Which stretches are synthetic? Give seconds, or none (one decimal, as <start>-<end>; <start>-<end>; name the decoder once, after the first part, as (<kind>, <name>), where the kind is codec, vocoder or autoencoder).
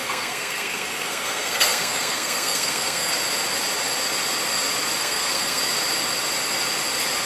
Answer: 0.0-3.1 (codec, SNAC); 5.0-5.6